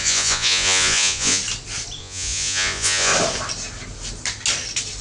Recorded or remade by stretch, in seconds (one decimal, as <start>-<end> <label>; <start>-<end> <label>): 0.0-1.4 remade; 1.4-2.0 recorded; 2.0-3.1 remade; 3.1-5.0 recorded